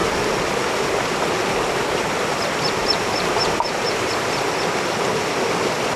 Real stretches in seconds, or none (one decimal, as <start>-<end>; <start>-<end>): 0.0-2.8; 4.1-6.0